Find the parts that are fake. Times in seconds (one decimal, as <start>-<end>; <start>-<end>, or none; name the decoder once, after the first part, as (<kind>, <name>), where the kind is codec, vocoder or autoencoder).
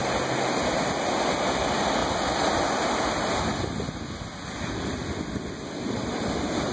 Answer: none